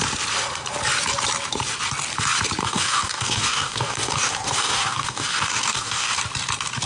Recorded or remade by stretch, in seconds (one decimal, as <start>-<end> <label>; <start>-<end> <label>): 0.0-2.6 recorded; 2.6-6.2 remade; 6.2-6.9 recorded